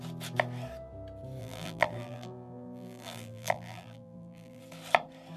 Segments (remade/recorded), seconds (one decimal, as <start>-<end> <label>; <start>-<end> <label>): 0.0-1.4 recorded; 1.4-4.6 remade; 4.6-5.4 recorded